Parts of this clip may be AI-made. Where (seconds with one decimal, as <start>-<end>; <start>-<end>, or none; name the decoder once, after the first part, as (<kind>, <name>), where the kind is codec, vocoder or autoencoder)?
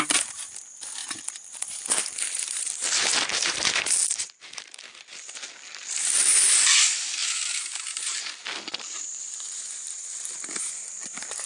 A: 0.0-11.5 (vocoder, BigVGAN v2)